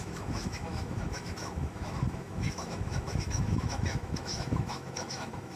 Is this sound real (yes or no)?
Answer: no